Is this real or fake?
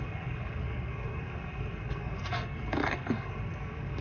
fake